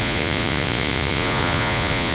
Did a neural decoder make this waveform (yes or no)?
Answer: yes